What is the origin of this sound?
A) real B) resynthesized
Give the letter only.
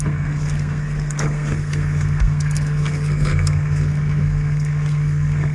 B